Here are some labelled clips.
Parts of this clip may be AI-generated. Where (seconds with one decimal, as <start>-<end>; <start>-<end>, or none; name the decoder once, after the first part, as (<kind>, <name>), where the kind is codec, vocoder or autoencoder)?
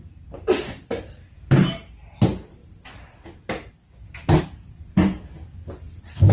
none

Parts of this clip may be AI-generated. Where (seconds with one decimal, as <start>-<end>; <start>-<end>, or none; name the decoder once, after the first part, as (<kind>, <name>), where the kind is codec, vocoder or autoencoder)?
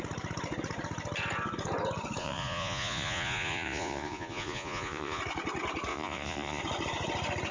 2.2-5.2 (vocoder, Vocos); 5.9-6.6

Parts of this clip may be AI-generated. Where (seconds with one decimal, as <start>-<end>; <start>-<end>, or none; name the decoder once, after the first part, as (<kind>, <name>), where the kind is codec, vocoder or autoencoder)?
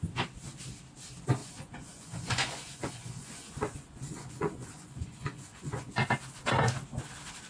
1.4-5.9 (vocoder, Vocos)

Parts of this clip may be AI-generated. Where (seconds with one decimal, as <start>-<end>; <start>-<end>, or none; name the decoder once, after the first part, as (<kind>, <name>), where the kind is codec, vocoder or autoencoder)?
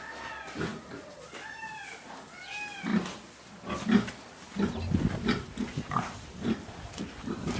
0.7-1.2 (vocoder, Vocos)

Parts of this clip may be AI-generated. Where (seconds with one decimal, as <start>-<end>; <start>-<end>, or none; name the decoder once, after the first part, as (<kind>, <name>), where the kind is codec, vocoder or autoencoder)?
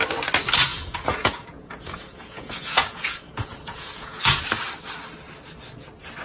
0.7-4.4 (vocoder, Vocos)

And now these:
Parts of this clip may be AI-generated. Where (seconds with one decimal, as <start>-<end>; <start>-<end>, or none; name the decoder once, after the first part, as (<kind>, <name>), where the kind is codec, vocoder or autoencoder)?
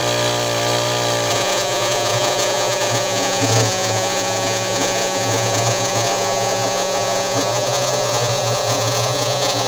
1.3-9.7 (vocoder, Vocos)